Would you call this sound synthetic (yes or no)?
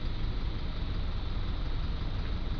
no